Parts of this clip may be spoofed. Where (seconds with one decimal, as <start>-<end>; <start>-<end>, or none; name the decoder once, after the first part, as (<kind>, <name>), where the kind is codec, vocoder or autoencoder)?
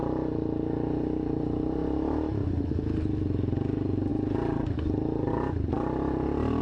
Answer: none